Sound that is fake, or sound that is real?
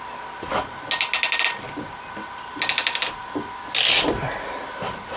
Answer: real